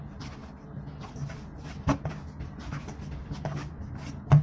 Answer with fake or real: real